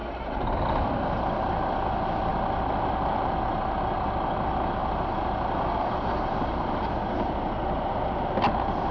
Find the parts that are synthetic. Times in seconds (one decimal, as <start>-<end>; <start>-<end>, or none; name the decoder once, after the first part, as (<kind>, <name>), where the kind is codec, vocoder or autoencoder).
0.0-0.6 (vocoder, BigVGAN v2); 4.8-6.9